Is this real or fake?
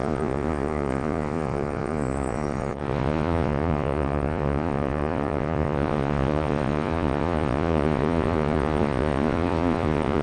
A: fake